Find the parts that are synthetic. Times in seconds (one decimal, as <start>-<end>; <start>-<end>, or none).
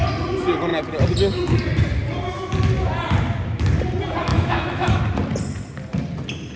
4.3-5.0